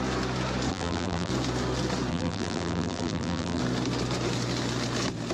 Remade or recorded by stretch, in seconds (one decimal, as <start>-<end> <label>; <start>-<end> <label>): 0.0-0.7 recorded; 0.7-1.3 remade; 1.3-2.1 recorded; 2.1-3.6 remade; 3.6-5.3 recorded